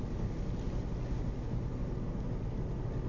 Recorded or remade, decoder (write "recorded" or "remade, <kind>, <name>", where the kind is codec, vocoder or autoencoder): recorded